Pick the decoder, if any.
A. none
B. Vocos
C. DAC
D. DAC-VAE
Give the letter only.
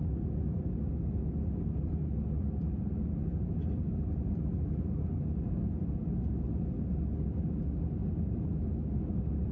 A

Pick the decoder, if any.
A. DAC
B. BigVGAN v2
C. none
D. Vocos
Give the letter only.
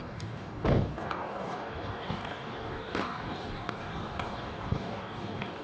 A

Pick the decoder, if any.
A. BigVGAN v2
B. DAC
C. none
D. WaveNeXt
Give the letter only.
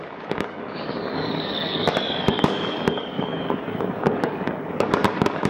B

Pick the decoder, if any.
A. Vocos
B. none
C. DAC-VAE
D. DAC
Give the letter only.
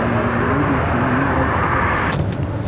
B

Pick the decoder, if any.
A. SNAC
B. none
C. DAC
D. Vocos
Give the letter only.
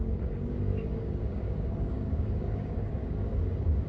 C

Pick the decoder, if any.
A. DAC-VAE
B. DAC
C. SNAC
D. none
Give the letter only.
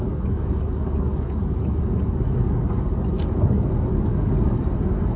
B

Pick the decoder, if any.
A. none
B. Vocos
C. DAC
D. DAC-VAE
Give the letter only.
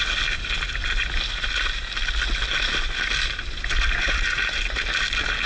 A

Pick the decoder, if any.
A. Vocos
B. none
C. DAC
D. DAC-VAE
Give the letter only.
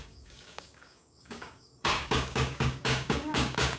C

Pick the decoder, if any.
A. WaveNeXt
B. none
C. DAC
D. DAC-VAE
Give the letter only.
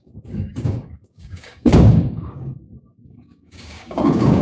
C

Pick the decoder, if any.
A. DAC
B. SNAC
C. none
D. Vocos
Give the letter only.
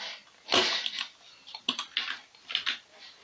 C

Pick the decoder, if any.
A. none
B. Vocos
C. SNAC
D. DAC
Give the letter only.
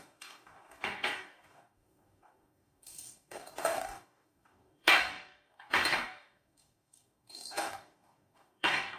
D